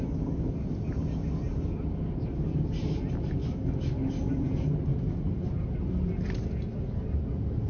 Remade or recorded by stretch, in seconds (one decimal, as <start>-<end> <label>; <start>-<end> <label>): 0.0-3.4 recorded; 3.4-4.1 remade; 4.1-7.7 recorded